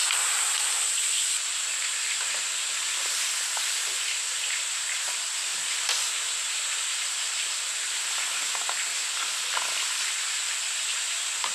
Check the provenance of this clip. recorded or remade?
recorded